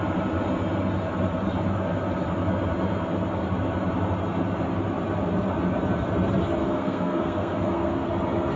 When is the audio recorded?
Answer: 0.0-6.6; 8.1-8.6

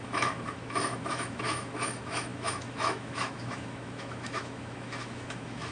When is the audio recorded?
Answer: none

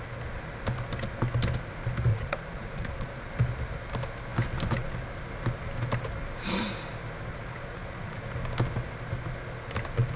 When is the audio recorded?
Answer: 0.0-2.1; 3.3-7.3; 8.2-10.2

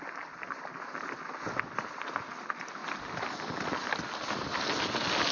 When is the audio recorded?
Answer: 0.0-5.3

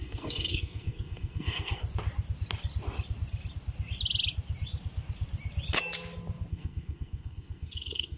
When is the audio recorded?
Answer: 1.8-6.5

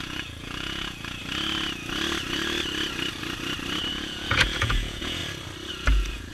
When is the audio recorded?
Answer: 1.2-3.9; 5.2-5.7

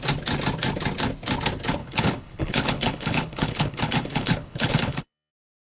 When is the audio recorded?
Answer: 0.0-1.8; 5.3-5.8

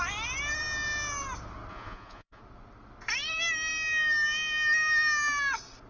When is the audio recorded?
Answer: 0.0-1.7; 2.4-5.9